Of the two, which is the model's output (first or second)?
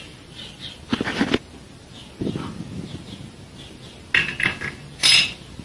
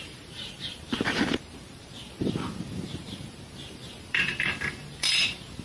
second